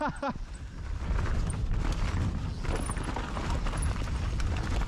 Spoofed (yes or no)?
no